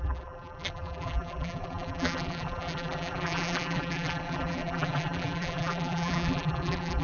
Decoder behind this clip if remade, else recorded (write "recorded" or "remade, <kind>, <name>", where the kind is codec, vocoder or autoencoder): remade, vocoder, BigVGAN v2